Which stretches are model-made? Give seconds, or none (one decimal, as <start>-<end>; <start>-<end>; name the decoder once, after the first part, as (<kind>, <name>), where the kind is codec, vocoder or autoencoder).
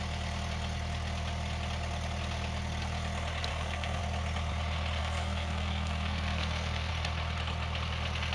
3.5-4.0 (codec, SNAC); 5.0-6.9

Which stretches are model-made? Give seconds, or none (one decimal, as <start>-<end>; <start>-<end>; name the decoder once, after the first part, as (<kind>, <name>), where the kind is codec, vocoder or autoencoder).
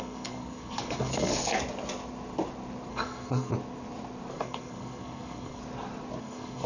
0.0-1.3 (codec, SNAC); 2.9-3.5; 4.3-5.6; 6.2-6.7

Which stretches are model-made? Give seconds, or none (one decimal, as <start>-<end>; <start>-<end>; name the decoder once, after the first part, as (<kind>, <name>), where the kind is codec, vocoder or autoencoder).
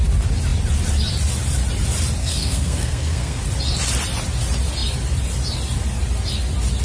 2.2-3.4 (codec, SNAC)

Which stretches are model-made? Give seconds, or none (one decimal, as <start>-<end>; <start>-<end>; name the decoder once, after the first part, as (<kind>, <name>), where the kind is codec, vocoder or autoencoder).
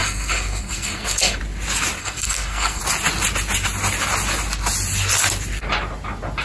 0.0-1.4 (codec, SNAC); 2.0-2.8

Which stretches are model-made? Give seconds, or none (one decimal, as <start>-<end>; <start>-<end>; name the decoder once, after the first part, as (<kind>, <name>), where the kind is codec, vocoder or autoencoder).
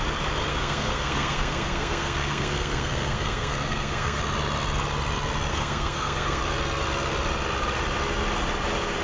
0.5-4.2 (codec, SNAC); 5.5-6.4